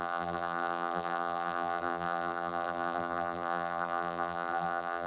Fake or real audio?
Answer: fake